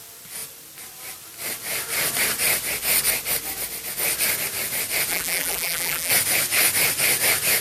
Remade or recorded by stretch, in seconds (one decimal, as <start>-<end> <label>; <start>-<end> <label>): 0.0-5.1 recorded; 5.1-6.1 remade; 6.1-7.6 recorded